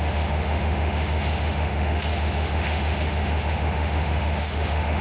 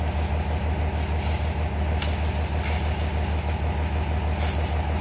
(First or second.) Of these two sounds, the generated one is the first